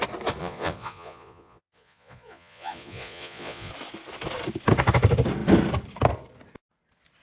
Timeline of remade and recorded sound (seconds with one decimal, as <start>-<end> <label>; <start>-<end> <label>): 0.0-0.4 recorded; 0.4-3.7 remade; 3.7-7.2 recorded